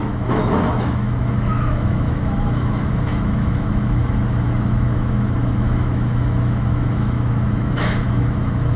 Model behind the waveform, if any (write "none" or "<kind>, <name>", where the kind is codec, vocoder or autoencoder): autoencoder, DAC-VAE